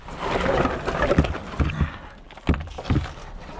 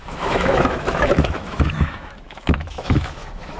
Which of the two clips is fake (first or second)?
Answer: second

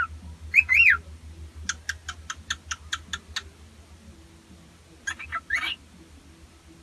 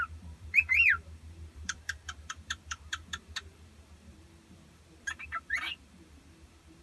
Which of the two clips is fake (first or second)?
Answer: second